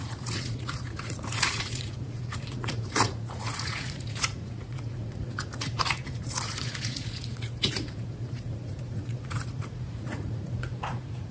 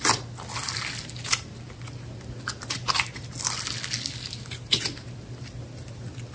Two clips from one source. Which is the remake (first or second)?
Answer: first